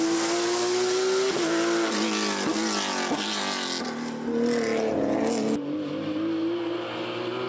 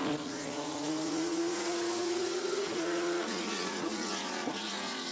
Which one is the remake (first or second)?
second